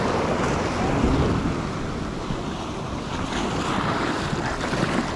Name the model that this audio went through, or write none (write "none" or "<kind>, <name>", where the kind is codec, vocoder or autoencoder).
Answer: none